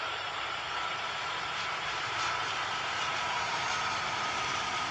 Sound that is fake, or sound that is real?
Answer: fake